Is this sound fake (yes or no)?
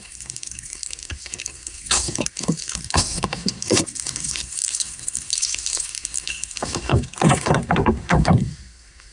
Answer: yes